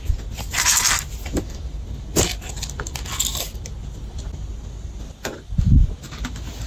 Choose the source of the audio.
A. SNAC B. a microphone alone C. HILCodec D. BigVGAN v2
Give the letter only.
B